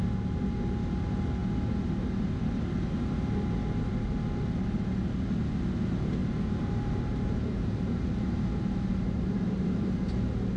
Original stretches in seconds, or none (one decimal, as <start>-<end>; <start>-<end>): 0.0-6.2; 9.8-10.6